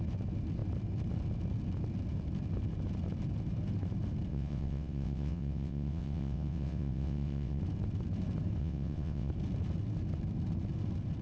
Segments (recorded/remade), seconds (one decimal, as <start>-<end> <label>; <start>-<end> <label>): 0.0-4.3 recorded; 4.3-7.6 remade; 7.6-8.6 recorded; 8.6-9.3 remade; 9.3-11.2 recorded